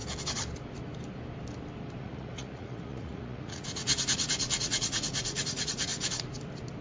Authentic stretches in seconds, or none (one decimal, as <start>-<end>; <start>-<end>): 0.0-2.0; 5.9-6.8